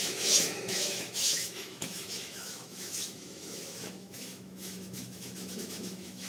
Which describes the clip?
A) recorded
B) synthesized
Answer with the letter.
B